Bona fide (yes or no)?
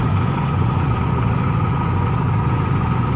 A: no